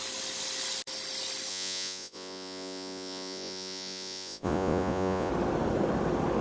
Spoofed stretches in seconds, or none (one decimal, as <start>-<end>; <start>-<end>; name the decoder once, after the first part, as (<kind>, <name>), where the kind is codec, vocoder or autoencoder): 1.5-5.3 (vocoder, Vocos)